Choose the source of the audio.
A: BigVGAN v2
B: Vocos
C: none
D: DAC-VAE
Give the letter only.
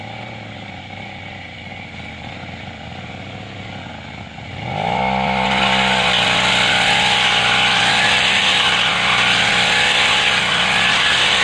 C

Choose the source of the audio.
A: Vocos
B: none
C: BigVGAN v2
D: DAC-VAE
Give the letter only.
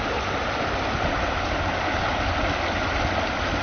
B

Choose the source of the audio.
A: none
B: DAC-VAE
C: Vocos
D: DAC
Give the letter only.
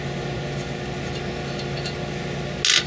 A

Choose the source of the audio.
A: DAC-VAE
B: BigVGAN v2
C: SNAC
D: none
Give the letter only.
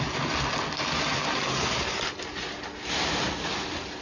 D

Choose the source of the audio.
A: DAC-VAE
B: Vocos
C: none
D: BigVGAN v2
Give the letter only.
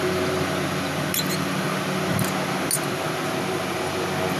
C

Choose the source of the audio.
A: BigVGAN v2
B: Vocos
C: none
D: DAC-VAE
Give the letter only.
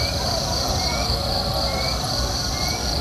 C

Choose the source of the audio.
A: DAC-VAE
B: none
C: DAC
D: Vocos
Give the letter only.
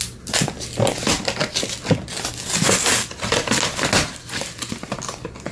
B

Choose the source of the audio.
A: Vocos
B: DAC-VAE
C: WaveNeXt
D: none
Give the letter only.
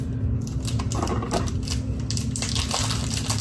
D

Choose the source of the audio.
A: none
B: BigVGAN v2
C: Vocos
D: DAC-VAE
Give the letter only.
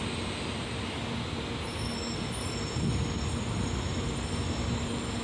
A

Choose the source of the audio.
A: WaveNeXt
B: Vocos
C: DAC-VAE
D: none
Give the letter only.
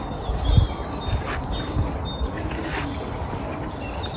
D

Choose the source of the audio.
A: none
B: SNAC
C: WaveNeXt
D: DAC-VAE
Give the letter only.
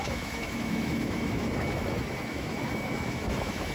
D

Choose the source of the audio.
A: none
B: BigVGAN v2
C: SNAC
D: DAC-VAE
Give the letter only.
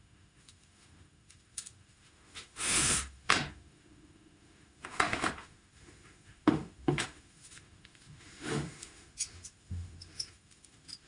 D